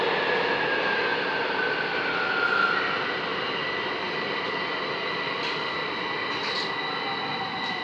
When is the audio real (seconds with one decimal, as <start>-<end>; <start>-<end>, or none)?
0.0-1.1; 1.9-3.3; 5.9-7.8